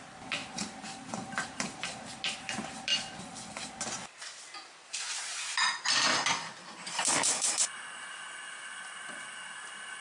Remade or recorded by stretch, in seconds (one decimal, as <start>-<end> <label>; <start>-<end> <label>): 0.0-10.0 recorded